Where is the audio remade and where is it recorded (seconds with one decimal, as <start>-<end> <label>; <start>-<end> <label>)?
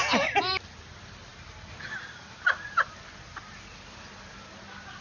0.0-5.0 recorded